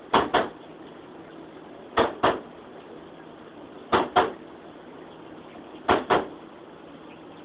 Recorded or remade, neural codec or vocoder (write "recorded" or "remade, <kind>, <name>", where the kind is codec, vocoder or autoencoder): recorded